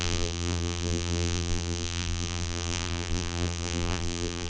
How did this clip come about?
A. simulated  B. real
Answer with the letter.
A